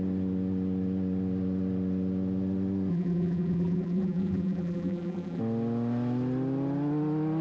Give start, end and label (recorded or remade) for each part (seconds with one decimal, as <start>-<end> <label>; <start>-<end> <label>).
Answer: 0.0-2.9 recorded; 2.9-5.4 remade; 5.4-7.4 recorded